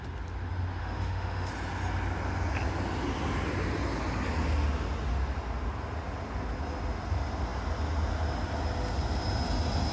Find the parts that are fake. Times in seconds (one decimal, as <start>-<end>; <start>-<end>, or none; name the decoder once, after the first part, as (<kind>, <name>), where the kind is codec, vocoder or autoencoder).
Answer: 0.8-1.5 (autoencoder, DAC-VAE)